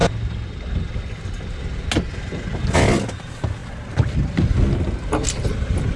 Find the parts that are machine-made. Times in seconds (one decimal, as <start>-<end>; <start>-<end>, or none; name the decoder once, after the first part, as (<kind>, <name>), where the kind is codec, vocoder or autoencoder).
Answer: 0.0-1.9 (vocoder, BigVGAN v2)